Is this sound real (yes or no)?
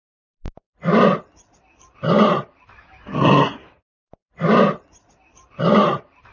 no